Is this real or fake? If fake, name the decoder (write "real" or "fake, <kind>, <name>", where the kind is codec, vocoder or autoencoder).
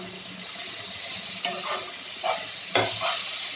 real